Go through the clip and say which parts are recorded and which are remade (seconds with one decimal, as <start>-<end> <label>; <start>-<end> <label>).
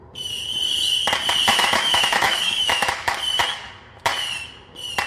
0.0-1.5 recorded; 1.5-3.2 remade; 3.2-5.1 recorded